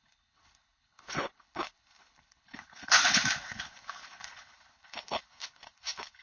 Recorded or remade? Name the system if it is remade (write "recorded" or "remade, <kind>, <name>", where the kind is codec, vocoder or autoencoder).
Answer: remade, codec, HILCodec